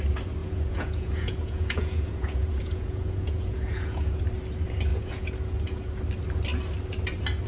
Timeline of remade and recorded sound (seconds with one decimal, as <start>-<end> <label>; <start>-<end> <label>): 0.0-0.4 recorded; 0.4-4.2 remade; 4.2-4.9 recorded; 4.9-6.0 remade; 6.0-7.5 recorded